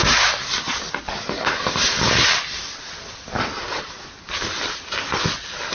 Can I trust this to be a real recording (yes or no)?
yes